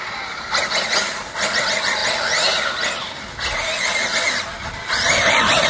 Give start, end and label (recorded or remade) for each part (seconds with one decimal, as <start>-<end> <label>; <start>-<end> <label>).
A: 0.0-5.7 recorded